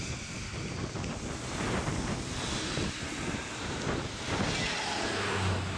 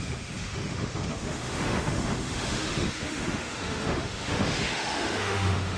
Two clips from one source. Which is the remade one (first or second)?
second